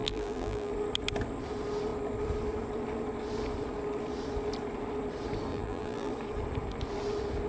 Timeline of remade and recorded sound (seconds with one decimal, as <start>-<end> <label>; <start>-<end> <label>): 0.0-0.7 remade; 0.7-5.5 recorded; 5.5-6.1 remade; 6.1-7.5 recorded

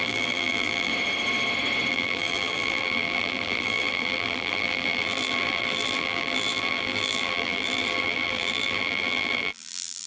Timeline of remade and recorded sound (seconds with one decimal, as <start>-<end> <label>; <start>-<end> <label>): 0.0-0.9 remade; 0.9-1.9 recorded; 1.9-10.1 remade